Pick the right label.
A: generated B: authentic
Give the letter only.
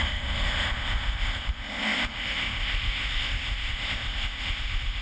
A